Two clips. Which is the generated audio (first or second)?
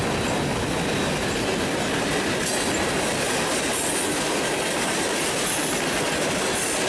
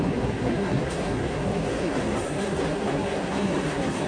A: second